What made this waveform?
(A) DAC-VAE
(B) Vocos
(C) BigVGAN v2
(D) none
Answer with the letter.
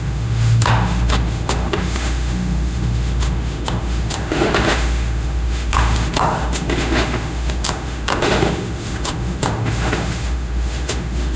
A